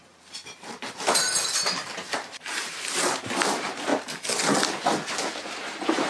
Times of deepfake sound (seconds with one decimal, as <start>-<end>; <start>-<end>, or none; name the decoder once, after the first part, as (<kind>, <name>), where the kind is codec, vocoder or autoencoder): 0.0-3.9 (vocoder, BigVGAN v2); 5.4-6.1